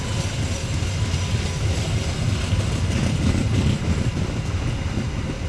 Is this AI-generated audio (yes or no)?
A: no